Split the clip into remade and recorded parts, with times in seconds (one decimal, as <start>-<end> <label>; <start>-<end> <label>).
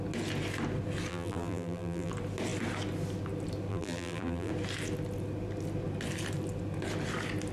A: 0.0-1.1 recorded; 1.1-2.1 remade; 2.1-3.7 recorded; 3.7-4.5 remade; 4.5-7.5 recorded